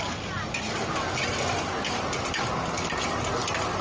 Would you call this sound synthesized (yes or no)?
no